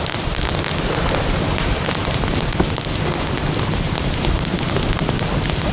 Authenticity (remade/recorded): recorded